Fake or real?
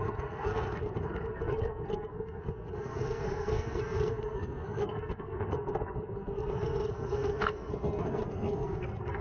fake